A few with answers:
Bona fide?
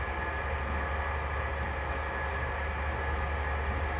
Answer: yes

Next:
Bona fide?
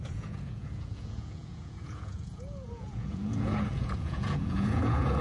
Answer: no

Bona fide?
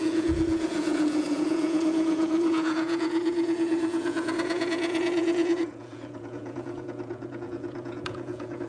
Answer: no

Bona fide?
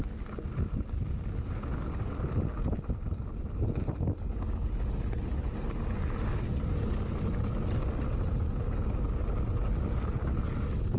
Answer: yes